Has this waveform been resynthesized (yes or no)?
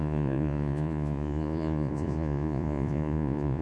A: yes